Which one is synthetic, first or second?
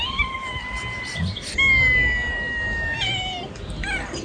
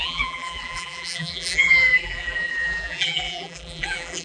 second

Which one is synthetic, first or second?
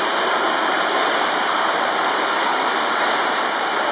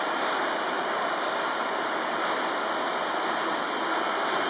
first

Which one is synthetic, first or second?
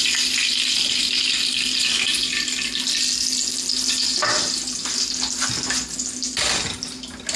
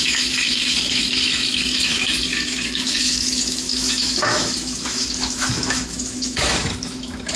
second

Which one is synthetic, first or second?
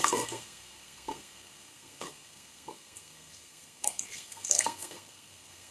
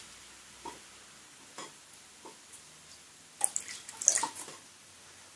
first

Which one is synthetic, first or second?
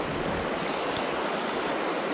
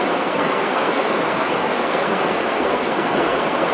second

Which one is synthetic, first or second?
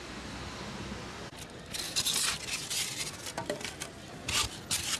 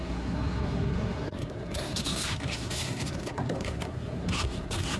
second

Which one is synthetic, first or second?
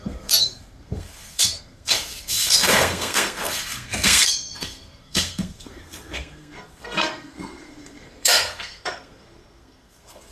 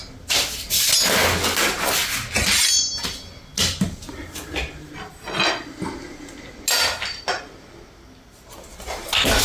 first